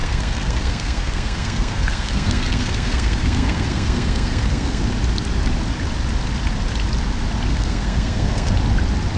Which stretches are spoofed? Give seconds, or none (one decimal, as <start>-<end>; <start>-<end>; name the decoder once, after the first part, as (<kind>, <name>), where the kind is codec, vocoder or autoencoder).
0.0-4.8 (codec, SNAC); 7.5-8.5